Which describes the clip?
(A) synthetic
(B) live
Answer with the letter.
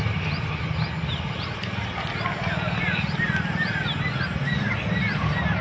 B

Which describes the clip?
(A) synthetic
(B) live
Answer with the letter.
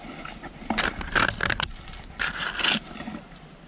B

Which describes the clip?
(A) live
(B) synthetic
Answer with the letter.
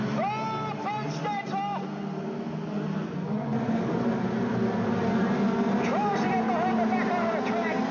A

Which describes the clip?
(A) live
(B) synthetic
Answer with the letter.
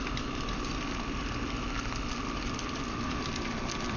A